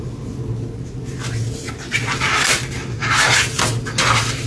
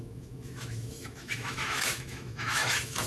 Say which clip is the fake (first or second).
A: second